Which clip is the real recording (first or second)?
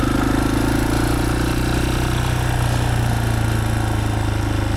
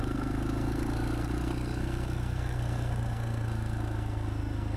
first